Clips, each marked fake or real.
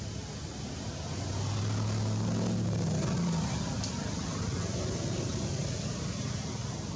real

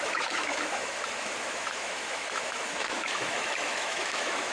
fake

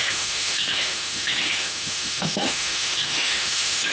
fake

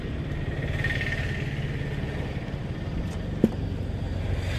real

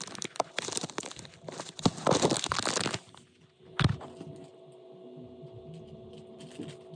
real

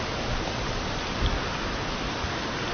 real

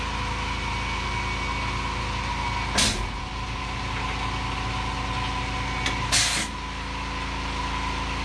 real